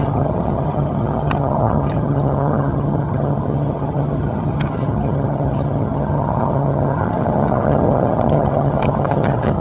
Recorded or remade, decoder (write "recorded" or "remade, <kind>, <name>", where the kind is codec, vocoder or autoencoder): remade, vocoder, HiFi-GAN